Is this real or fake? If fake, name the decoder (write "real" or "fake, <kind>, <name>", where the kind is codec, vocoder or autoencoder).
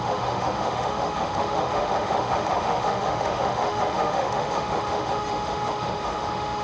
fake, autoencoder, DAC-VAE